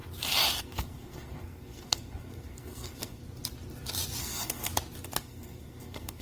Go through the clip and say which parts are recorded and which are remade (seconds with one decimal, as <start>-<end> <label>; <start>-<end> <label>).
0.0-0.6 recorded; 0.6-3.2 remade; 3.2-4.2 recorded; 4.2-4.7 remade; 4.7-5.2 recorded; 5.2-6.2 remade